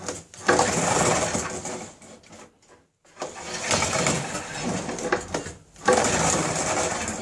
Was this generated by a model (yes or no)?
no